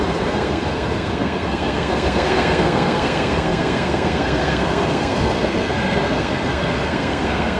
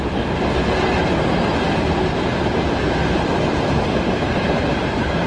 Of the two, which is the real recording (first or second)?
second